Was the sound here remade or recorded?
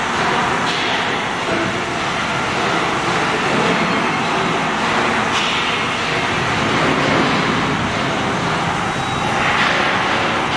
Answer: recorded